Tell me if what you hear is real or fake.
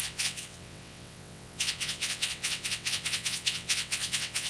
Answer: fake